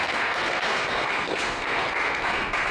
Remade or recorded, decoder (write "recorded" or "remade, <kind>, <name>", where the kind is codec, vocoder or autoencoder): remade, codec, SNAC